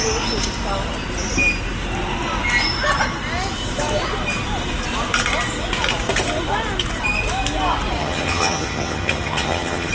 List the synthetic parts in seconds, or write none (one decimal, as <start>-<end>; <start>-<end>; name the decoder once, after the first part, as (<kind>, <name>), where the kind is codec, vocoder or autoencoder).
8.0-9.9 (vocoder, HiFi-GAN)